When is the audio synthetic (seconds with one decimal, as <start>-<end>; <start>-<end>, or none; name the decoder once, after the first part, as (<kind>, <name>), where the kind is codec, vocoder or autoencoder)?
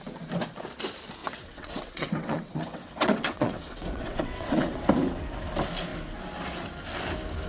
1.2-4.8 (vocoder, WaveNeXt)